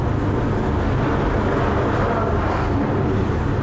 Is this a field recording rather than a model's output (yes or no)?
yes